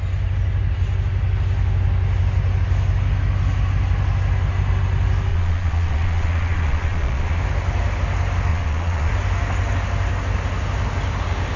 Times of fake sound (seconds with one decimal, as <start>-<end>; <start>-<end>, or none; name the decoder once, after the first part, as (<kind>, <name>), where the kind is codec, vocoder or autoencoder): 5.3-7.4 (vocoder, Vocos); 8.5-9.1